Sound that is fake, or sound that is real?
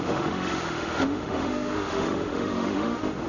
fake